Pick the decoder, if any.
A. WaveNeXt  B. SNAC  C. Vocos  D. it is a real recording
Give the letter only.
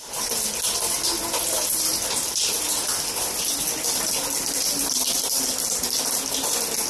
D